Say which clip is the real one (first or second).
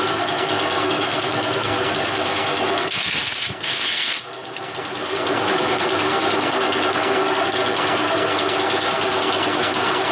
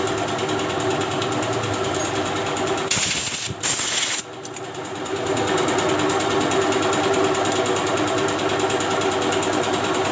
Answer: second